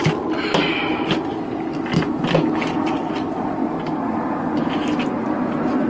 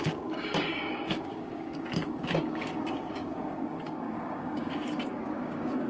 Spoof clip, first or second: second